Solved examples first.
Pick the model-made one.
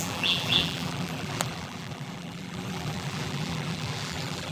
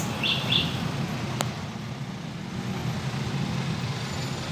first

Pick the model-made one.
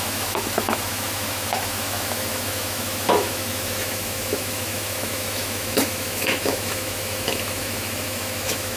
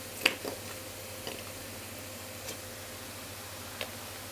first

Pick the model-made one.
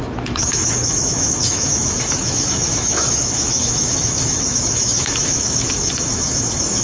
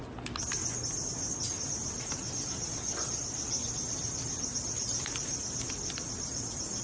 first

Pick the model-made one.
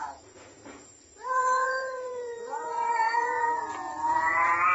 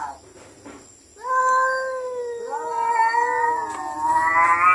first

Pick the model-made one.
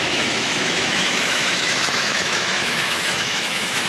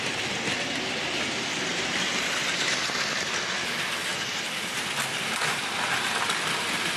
first